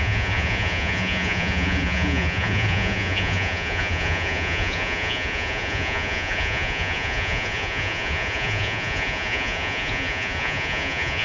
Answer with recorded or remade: remade